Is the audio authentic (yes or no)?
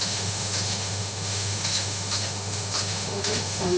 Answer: no